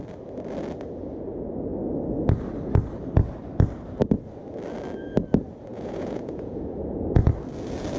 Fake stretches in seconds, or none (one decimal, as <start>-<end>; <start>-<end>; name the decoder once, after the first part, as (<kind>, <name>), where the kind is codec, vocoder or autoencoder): 5.7-7.3 (vocoder, Vocos)